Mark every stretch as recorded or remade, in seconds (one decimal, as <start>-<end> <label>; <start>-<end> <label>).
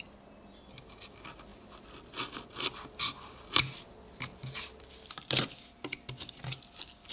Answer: 0.0-7.1 recorded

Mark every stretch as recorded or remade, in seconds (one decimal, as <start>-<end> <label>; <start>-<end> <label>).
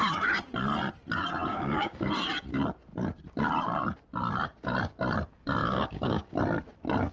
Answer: 0.0-1.5 recorded; 1.5-2.1 remade; 2.1-5.6 recorded; 5.6-6.4 remade; 6.4-7.1 recorded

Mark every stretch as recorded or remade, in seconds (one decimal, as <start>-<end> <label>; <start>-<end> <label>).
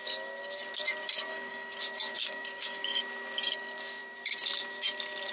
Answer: 0.0-1.3 recorded; 1.3-1.8 remade; 1.8-2.2 recorded; 2.2-3.0 remade; 3.0-5.3 recorded